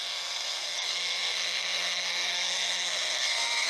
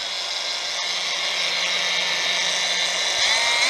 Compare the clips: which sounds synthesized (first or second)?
first